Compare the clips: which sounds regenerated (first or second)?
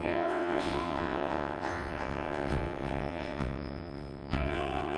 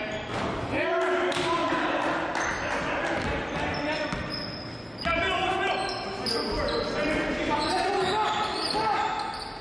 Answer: first